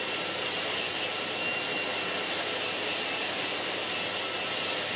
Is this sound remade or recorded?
recorded